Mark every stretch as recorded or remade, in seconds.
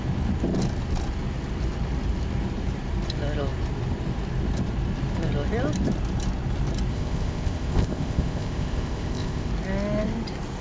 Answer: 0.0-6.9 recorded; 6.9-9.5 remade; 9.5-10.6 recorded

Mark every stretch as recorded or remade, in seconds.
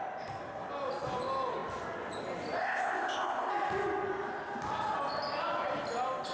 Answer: 0.0-2.6 recorded; 2.6-3.5 remade; 3.5-6.3 recorded